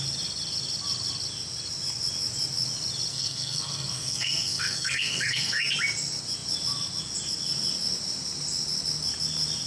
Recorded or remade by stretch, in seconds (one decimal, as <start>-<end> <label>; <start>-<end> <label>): 0.0-3.1 recorded; 3.1-5.7 remade; 5.7-9.7 recorded